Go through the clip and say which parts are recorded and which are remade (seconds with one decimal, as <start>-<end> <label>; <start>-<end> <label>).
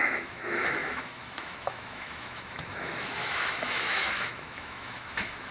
0.0-5.5 remade